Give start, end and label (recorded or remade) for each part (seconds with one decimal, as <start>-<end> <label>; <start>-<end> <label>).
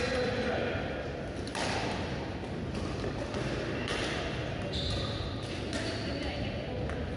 0.0-4.4 recorded; 4.4-5.3 remade; 5.3-7.2 recorded